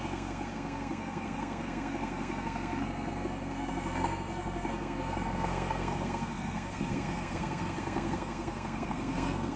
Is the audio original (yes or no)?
no